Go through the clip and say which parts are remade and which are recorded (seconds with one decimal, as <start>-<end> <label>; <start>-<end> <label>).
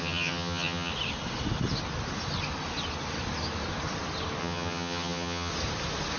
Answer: 0.0-0.9 remade; 0.9-4.4 recorded; 4.4-5.5 remade; 5.5-6.2 recorded